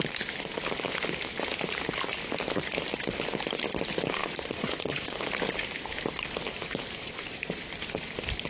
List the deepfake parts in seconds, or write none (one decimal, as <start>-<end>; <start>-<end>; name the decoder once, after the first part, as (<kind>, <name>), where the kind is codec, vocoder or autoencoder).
4.2-5.3 (vocoder, Vocos); 7.0-7.6